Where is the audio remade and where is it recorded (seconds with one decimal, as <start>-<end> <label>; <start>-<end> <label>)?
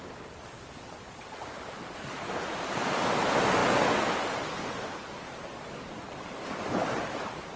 0.0-7.6 recorded